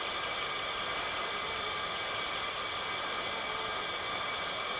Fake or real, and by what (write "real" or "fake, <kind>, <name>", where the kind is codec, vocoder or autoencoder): real